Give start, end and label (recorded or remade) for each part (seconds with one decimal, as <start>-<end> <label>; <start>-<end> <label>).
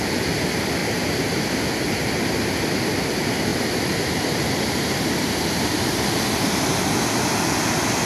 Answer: 0.0-0.8 recorded; 0.8-1.9 remade; 1.9-3.5 recorded; 3.5-5.1 remade; 5.1-8.1 recorded